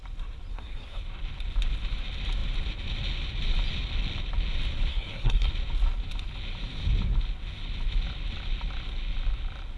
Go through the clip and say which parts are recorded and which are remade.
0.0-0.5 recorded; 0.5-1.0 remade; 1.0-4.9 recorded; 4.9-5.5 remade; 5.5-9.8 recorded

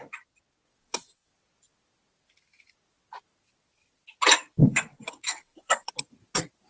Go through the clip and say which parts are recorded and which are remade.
0.0-0.8 recorded; 0.8-1.3 remade; 1.3-4.6 recorded; 4.6-5.9 remade; 5.9-6.7 recorded

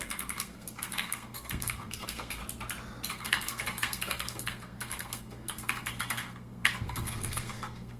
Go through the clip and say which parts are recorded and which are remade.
0.0-2.4 remade; 2.4-3.1 recorded; 3.1-8.0 remade

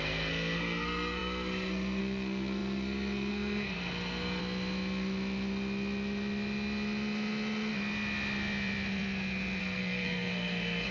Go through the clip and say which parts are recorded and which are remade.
0.0-4.4 remade; 4.4-9.6 recorded; 9.6-10.9 remade

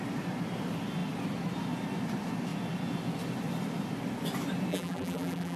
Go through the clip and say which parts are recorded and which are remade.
0.0-4.7 recorded; 4.7-5.6 remade

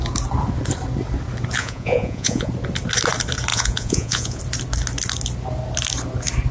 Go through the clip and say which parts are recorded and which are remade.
0.0-1.6 recorded; 1.6-2.5 remade; 2.5-3.5 recorded; 3.5-4.4 remade; 4.4-6.5 recorded

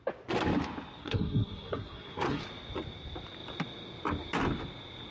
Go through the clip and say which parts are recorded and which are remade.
0.0-1.0 recorded; 1.0-2.4 remade; 2.4-5.1 recorded

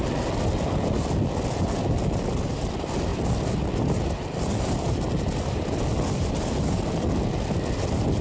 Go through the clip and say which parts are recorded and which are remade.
0.0-8.2 recorded